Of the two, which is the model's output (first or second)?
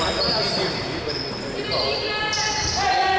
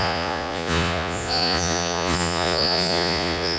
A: second